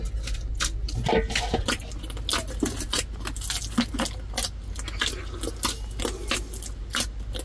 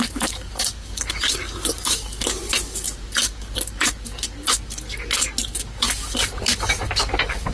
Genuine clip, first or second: first